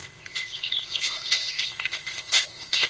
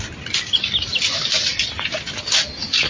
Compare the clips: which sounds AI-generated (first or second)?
first